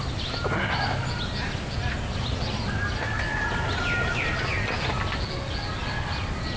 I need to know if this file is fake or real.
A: real